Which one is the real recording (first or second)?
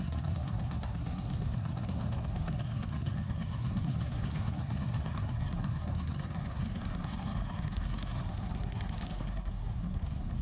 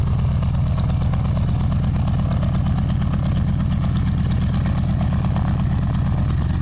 second